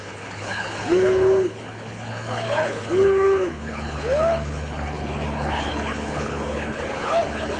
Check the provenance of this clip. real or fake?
fake